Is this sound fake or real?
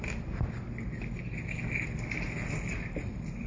real